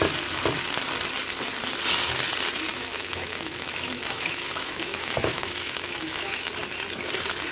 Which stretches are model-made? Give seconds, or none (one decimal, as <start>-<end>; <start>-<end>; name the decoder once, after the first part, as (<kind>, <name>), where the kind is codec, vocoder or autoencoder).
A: 2.7-6.5 (autoencoder, DAC-VAE)